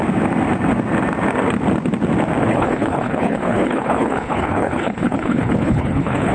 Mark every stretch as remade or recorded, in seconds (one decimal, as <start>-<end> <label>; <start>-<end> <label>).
0.0-2.5 recorded; 2.5-6.3 remade

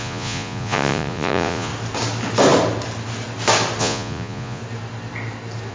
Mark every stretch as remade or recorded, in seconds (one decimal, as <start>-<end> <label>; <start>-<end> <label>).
0.0-1.7 remade; 1.7-3.8 recorded; 3.8-4.6 remade; 4.6-5.7 recorded

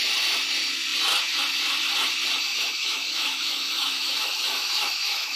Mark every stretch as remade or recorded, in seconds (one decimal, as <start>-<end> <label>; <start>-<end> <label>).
0.0-2.5 recorded; 2.5-5.4 remade

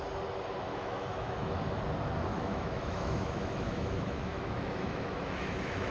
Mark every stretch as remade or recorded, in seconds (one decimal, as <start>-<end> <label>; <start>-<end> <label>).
0.0-0.7 recorded; 0.7-1.6 remade; 1.6-2.3 recorded; 2.3-5.9 remade

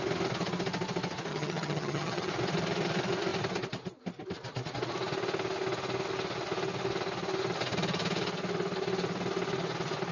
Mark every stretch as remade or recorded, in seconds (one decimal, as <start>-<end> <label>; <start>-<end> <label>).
0.0-1.3 recorded; 1.3-2.3 remade; 2.3-10.1 recorded

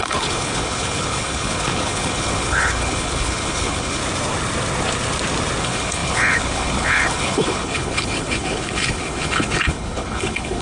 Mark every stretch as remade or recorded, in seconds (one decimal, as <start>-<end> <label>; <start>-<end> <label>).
0.0-4.0 remade; 4.0-5.6 recorded; 5.6-10.6 remade

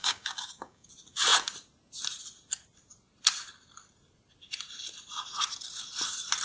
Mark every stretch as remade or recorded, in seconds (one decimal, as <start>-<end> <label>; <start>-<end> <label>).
0.0-0.9 remade; 0.9-6.4 recorded